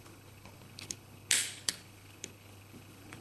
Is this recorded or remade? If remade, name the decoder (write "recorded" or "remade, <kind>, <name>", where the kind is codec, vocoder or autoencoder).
remade, codec, HILCodec